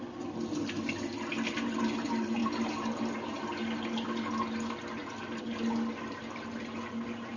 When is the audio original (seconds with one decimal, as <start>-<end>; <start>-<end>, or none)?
0.0-7.4